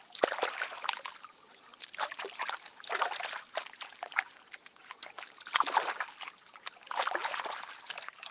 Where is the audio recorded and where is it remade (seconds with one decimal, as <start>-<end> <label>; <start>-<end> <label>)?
0.0-8.3 recorded